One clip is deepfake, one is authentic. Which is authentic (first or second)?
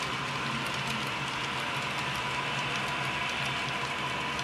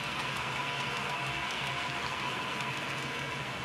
first